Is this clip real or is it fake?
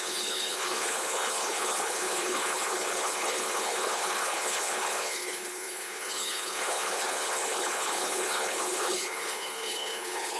fake